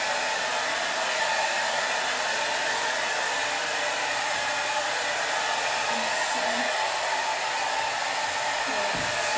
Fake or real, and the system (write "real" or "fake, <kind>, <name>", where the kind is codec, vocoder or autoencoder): real